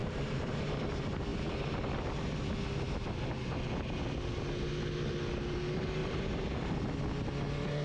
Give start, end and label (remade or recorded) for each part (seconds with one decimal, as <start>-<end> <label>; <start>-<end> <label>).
0.0-0.9 remade; 0.9-6.0 recorded; 6.0-6.7 remade; 6.7-7.8 recorded